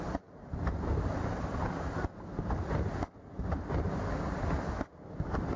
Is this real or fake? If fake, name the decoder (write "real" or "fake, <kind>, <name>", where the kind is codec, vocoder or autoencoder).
real